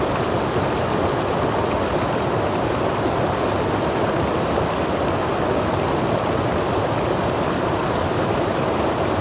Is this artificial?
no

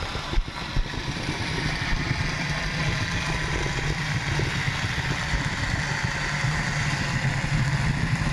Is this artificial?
yes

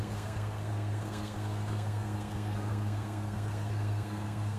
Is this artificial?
yes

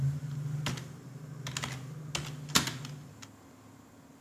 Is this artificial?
no